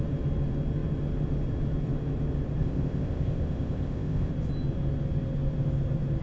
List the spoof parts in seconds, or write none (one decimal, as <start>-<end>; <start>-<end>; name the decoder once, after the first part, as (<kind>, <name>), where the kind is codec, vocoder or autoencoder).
2.6-4.3 (codec, ZipCodec)